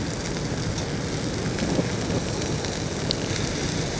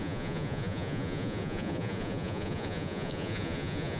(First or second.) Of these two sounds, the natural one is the first